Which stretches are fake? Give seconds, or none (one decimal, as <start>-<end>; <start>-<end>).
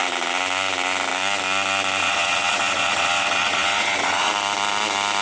2.0-4.3